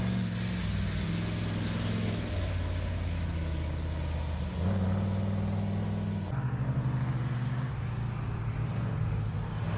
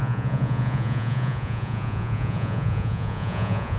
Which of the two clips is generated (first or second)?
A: second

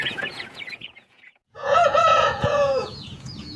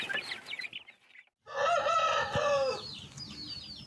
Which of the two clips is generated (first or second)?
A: first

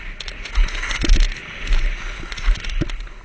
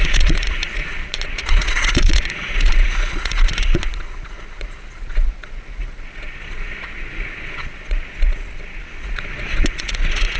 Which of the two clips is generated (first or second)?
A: second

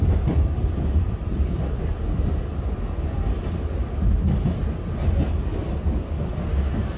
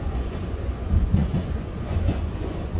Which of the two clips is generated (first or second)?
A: second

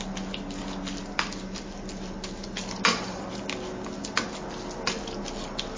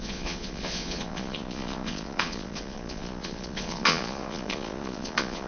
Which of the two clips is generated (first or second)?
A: second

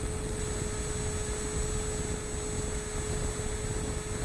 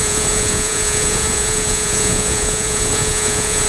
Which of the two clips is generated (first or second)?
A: second